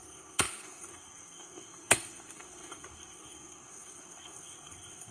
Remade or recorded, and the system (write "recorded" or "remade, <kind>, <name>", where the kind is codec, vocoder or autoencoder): remade, codec, SNAC